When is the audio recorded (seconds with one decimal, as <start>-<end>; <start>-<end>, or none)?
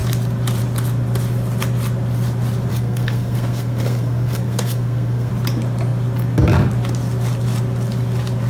0.0-2.7; 5.3-8.5